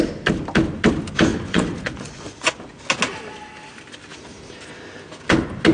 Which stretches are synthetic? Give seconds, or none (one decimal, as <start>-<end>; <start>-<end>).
1.3-2.5